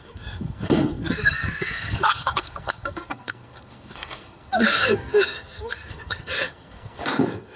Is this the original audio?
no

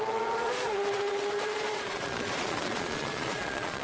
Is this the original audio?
no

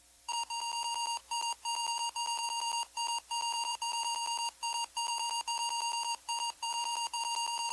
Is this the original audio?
no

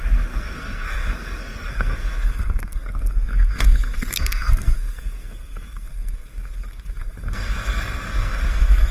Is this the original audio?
no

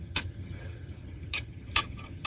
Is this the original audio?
no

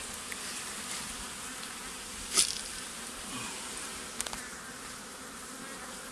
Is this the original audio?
yes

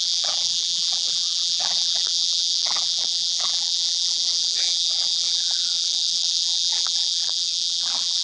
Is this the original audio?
no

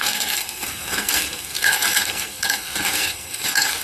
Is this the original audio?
no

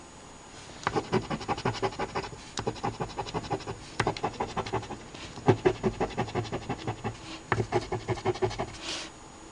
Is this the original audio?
yes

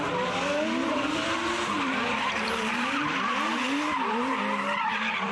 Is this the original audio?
no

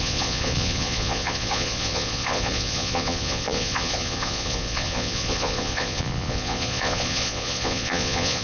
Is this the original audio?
no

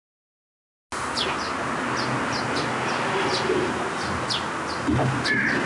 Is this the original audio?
yes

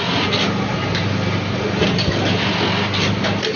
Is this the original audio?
yes